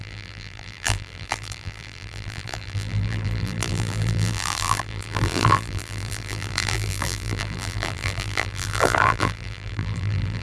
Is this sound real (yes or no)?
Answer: no